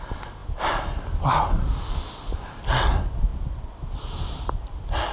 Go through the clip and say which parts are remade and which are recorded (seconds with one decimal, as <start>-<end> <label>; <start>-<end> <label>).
0.0-3.3 recorded; 3.3-4.5 remade; 4.5-5.1 recorded